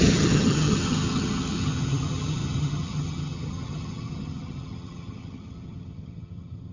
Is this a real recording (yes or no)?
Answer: no